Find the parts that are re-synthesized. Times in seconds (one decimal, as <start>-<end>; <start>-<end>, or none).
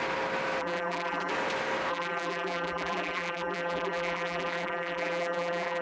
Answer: 0.6-1.3; 1.9-5.8